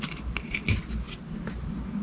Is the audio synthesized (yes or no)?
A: no